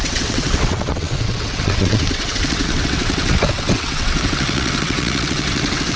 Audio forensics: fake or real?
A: fake